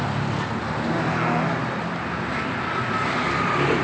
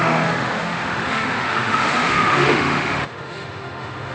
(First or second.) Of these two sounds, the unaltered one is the first